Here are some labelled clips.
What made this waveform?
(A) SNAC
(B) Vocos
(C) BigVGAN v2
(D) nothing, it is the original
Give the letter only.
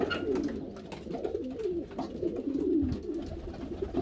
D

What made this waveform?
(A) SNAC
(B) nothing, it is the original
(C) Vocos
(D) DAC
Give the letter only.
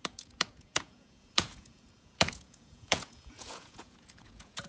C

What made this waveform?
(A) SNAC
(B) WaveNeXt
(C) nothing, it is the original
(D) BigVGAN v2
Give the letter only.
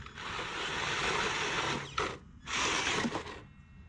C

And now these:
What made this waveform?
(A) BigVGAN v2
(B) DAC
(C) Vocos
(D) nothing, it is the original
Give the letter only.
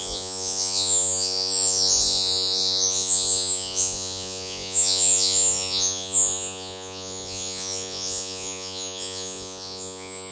C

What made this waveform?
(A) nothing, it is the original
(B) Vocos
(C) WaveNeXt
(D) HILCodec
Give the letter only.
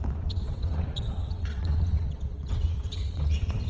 C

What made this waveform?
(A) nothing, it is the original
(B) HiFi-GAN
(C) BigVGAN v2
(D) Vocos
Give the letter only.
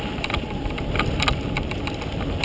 A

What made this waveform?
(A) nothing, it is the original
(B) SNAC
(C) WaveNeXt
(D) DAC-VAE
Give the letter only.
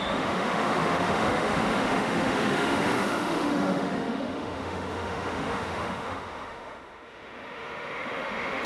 D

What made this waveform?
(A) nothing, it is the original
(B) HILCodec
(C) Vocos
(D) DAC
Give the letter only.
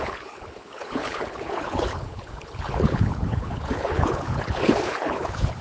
B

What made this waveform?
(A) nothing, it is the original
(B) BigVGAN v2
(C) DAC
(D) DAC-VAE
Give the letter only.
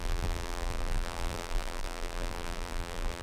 B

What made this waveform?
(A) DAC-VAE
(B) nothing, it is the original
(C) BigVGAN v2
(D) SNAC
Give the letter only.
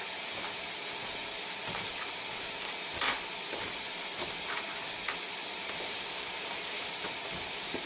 B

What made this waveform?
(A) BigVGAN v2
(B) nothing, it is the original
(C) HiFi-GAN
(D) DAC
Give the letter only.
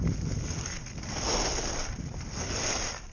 B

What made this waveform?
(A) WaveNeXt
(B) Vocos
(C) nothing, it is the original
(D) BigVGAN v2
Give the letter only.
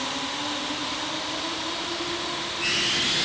C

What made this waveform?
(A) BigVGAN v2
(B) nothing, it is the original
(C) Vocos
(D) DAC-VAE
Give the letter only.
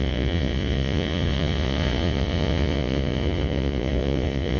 C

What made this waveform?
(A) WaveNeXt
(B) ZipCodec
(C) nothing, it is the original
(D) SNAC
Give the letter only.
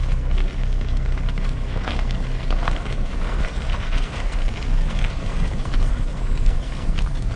D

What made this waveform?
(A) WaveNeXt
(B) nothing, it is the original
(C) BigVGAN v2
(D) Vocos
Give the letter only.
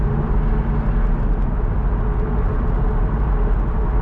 B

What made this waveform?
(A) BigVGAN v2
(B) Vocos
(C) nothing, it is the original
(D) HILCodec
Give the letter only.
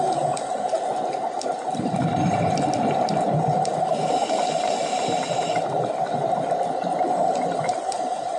C